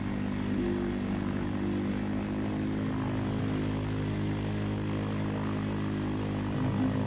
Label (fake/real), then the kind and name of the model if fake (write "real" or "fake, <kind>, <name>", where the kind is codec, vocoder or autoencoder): real